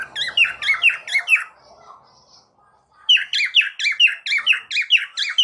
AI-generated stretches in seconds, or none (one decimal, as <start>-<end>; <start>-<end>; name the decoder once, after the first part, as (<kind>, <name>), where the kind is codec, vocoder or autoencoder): none